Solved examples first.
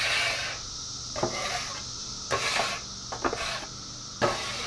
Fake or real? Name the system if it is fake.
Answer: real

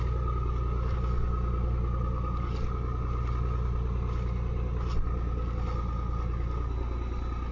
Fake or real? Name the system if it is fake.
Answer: real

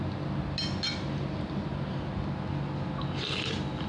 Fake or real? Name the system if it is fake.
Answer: real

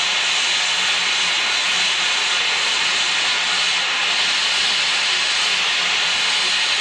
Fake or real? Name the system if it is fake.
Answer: real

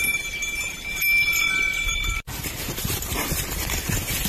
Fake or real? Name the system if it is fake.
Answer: fake, vocoder, BigVGAN v2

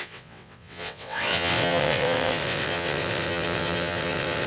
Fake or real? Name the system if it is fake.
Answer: fake, vocoder, WaveNeXt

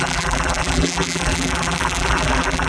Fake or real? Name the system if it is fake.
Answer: fake, vocoder, BigVGAN v2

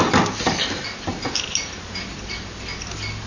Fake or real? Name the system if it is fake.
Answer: real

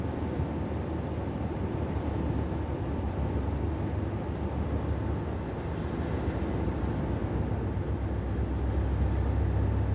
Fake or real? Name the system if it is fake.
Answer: real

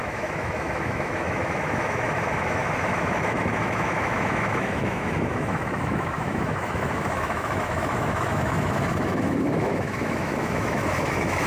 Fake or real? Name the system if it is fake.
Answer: fake, autoencoder, DAC-VAE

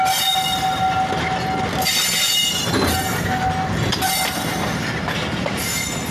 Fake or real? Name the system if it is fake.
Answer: real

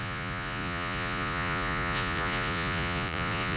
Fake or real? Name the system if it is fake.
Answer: fake, vocoder, Vocos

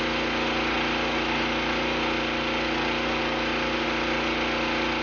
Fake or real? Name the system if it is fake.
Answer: real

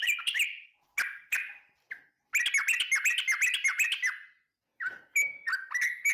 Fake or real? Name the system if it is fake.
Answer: real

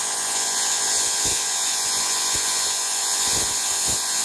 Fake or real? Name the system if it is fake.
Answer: fake, vocoder, Vocos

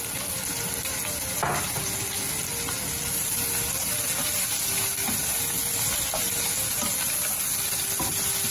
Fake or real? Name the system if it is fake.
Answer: real